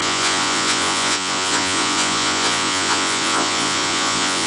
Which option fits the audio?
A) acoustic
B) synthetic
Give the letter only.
B